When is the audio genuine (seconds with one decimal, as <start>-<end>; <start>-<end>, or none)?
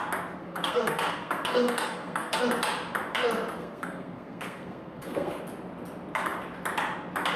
0.0-0.4; 2.4-3.6; 5.4-7.4